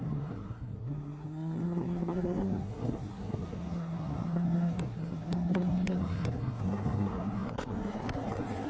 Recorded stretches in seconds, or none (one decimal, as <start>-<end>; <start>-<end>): none